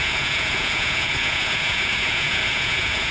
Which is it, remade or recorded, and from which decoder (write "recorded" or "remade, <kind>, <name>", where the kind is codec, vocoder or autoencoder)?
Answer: remade, vocoder, Vocos